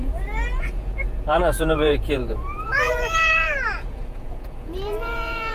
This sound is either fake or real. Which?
fake